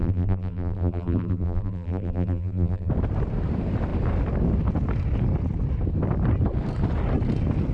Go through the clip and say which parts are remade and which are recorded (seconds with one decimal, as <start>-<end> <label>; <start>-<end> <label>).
0.0-2.9 remade; 2.9-7.7 recorded